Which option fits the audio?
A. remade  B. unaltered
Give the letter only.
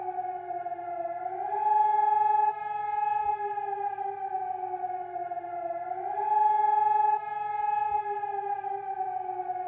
B